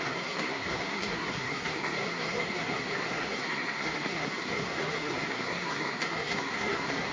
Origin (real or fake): fake